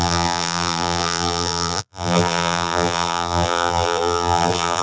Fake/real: fake